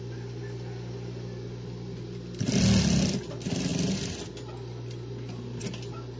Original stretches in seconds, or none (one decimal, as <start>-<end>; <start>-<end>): 0.0-6.2